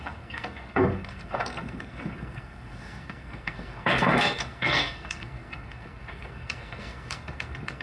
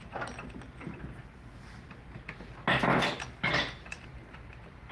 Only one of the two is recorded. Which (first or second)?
second